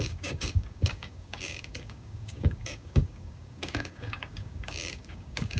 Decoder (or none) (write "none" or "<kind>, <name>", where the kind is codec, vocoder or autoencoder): codec, DAC